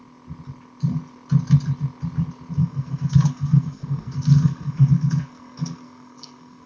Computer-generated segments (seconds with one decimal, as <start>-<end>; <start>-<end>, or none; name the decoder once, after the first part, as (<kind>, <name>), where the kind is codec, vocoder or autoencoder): 2.6-6.7 (codec, SNAC)